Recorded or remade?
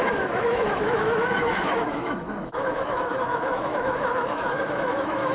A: remade